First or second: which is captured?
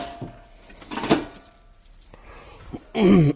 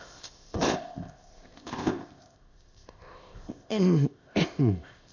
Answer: first